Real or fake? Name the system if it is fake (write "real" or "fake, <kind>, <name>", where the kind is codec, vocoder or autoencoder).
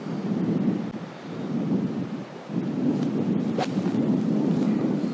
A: real